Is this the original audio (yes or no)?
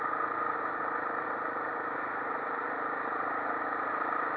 yes